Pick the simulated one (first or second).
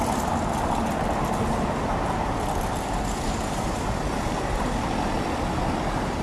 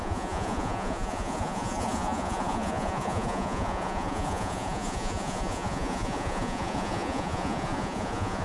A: second